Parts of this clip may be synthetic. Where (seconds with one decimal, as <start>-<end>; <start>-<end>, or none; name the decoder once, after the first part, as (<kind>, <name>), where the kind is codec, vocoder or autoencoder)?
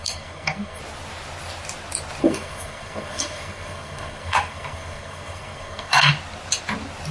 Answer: 0.0-0.8 (codec, SNAC); 2.2-6.1